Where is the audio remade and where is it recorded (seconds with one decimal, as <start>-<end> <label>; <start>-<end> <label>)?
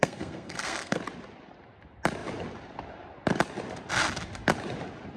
0.0-1.0 remade; 1.0-5.2 recorded